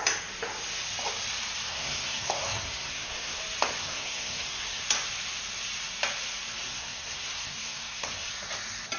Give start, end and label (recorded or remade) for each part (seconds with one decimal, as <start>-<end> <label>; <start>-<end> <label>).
0.0-1.7 recorded; 1.7-3.4 remade; 3.4-3.8 recorded; 3.8-4.8 remade; 4.8-6.7 recorded; 6.7-8.3 remade; 8.3-9.0 recorded

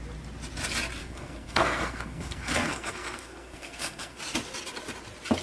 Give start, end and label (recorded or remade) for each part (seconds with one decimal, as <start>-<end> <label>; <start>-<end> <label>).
0.0-1.0 recorded; 1.0-4.2 remade; 4.2-5.4 recorded

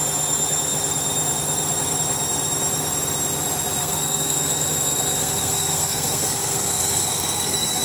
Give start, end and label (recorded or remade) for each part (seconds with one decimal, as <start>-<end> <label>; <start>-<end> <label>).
0.0-3.8 recorded; 3.8-7.8 remade

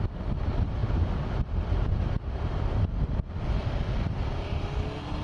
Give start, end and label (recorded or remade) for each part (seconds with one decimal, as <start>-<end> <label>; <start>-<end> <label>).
0.0-5.2 recorded

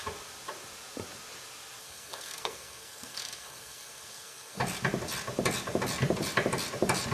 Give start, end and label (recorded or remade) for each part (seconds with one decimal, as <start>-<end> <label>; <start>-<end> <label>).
0.0-1.8 recorded; 1.8-4.6 remade; 4.6-7.1 recorded